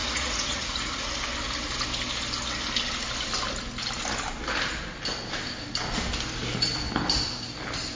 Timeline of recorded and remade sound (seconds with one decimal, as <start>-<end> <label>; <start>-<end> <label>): 0.0-1.1 remade; 1.1-7.9 recorded